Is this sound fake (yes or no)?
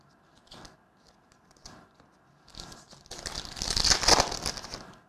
no